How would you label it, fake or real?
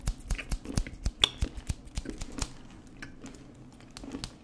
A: real